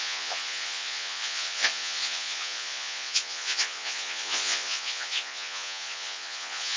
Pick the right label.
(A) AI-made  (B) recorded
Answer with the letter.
A